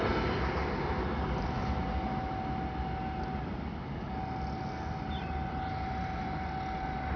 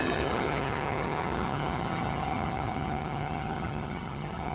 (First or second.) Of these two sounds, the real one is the first